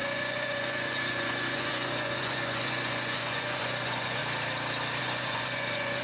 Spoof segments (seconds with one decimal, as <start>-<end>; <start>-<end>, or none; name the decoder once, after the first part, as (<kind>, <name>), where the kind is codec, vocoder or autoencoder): 0.0-4.2 (vocoder, Vocos); 5.0-6.0